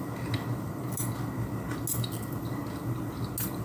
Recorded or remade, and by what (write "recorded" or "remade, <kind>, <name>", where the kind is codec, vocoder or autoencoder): recorded